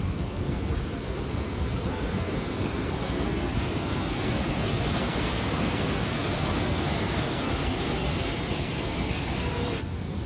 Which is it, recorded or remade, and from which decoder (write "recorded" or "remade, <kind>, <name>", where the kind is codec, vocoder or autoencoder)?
remade, codec, SNAC